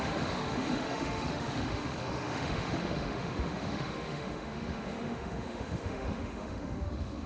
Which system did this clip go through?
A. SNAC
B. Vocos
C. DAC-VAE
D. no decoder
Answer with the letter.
C